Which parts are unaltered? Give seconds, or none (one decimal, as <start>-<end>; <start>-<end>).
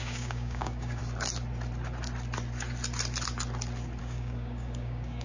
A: 1.0-4.0